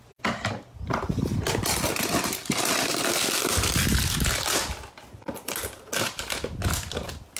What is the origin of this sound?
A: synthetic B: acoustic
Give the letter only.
B